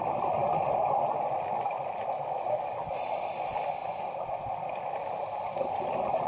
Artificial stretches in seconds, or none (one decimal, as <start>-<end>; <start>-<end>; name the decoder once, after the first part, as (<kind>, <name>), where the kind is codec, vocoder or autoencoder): none